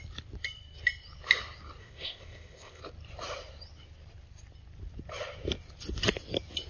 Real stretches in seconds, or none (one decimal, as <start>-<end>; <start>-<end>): 0.0-1.8; 2.8-6.7